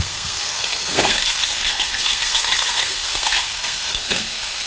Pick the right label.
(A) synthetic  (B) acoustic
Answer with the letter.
A